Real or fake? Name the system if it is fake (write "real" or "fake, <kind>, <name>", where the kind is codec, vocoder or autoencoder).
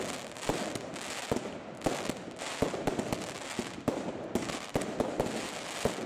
real